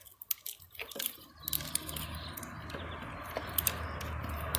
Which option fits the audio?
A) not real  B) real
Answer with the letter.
B